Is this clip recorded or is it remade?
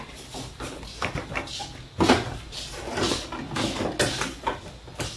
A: recorded